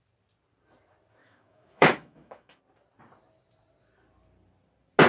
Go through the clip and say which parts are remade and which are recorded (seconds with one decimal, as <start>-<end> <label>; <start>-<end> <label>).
0.0-1.2 recorded; 1.2-2.6 remade; 2.6-5.1 recorded